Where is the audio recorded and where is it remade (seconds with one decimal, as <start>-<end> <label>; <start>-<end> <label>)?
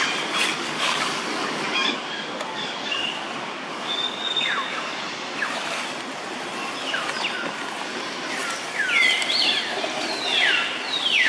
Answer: 0.0-0.5 recorded; 0.5-5.0 remade; 5.0-11.3 recorded